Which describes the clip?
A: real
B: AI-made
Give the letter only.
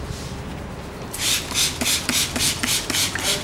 A